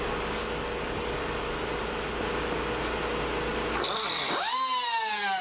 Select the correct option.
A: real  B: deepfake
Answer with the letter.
A